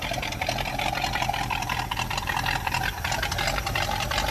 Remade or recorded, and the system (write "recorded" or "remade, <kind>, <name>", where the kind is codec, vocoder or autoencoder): remade, vocoder, BigVGAN v2